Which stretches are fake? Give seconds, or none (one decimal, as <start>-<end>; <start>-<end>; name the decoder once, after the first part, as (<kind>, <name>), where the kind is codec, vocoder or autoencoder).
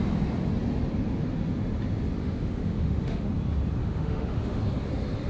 2.2-3.3 (autoencoder, DAC-VAE); 3.8-4.6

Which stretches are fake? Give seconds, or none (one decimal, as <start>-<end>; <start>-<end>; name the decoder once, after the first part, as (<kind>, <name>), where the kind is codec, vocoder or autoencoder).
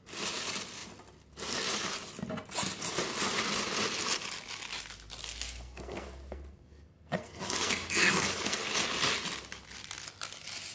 5.2-8.6 (codec, SNAC)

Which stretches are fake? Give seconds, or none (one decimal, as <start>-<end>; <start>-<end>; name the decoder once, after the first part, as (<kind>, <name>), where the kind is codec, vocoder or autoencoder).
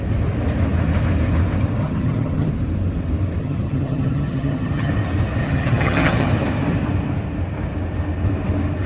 1.8-2.5 (vocoder, HiFi-GAN); 3.4-4.9; 5.4-6.3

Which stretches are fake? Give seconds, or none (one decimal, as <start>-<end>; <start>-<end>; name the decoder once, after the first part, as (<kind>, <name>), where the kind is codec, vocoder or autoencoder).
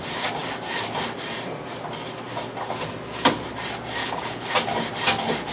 4.0-4.5 (codec, HILCodec)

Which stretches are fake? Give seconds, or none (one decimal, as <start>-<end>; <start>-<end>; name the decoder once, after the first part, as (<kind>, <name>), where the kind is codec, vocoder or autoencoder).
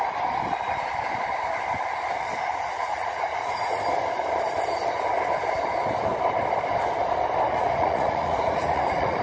2.5-3.8 (vocoder, Vocos); 7.5-9.2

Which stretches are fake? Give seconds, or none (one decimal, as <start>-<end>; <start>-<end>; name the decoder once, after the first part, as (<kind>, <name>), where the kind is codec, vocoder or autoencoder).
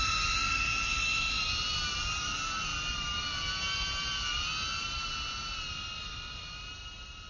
none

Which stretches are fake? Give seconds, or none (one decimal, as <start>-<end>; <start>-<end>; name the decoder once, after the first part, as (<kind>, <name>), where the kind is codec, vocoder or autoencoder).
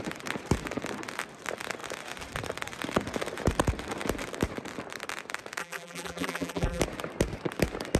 5.6-6.8 (vocoder, BigVGAN v2)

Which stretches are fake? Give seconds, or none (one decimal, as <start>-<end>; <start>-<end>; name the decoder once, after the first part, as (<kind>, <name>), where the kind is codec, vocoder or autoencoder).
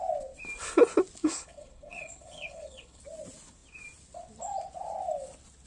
1.2-3.0 (codec, HILCodec)